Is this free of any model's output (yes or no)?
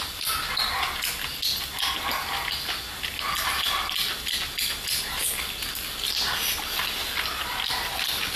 yes